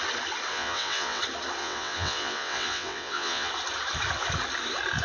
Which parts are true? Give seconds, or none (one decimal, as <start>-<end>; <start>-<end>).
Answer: 0.0-0.5; 1.2-1.6; 3.5-5.0